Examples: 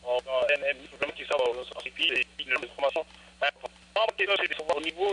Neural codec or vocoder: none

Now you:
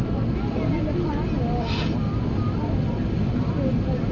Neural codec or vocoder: none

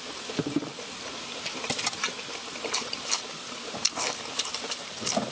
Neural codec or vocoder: vocoder, BigVGAN v2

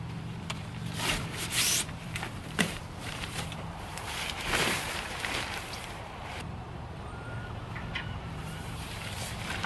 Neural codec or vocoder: vocoder, BigVGAN v2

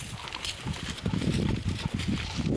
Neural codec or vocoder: none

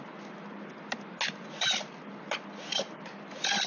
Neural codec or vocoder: none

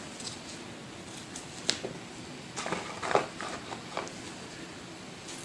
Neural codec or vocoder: vocoder, BigVGAN v2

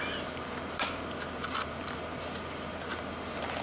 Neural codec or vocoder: none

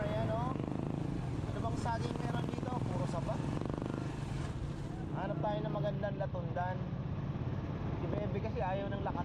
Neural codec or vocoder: none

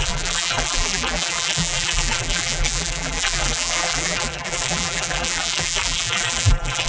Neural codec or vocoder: vocoder, BigVGAN v2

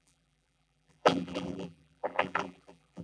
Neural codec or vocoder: vocoder, BigVGAN v2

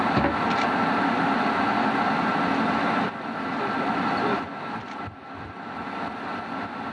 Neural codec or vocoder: none